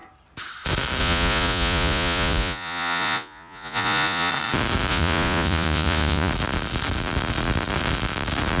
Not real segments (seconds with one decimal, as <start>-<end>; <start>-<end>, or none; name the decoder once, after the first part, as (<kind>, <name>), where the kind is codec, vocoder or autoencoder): 1.0-4.3 (vocoder, Vocos); 4.9-6.3